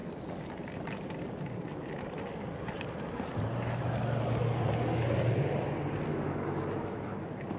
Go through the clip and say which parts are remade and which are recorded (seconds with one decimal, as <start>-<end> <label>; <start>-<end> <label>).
0.0-6.1 recorded; 6.1-7.1 remade; 7.1-7.6 recorded